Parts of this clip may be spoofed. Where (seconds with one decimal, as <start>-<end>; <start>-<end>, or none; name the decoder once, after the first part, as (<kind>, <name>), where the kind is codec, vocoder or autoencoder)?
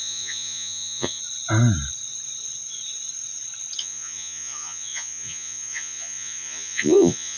0.0-1.2 (vocoder, Vocos); 3.8-7.4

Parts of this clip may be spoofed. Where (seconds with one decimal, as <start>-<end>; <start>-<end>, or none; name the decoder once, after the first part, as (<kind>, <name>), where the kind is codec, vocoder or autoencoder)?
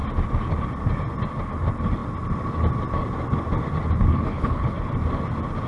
4.1-4.9 (codec, HILCodec)